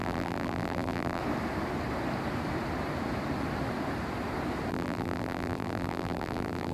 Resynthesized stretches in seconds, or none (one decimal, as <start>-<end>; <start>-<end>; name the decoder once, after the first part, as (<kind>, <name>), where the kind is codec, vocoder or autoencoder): 0.0-1.2 (vocoder, BigVGAN v2); 4.7-6.7